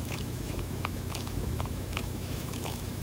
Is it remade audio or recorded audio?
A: remade